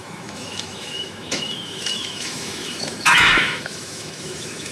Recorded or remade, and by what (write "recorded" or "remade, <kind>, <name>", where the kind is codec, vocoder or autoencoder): remade, autoencoder, DAC-VAE